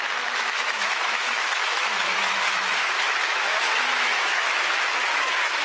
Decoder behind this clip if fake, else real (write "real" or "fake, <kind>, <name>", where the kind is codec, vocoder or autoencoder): fake, autoencoder, DAC-VAE